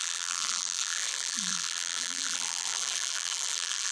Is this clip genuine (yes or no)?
no